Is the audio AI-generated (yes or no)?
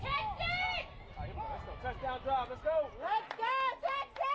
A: no